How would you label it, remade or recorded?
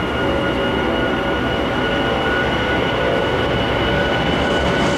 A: recorded